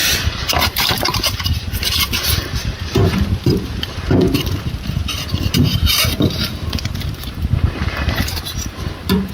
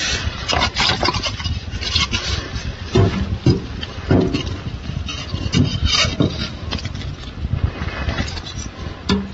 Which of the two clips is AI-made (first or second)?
first